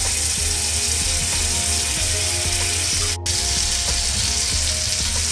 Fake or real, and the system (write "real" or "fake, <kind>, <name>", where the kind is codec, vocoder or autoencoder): real